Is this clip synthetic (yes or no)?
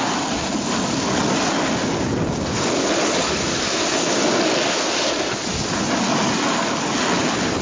no